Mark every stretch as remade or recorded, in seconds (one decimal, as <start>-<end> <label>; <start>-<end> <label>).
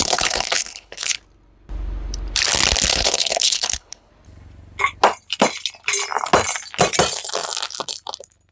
0.0-1.2 remade; 1.2-2.9 recorded; 2.9-4.1 remade; 4.1-8.5 recorded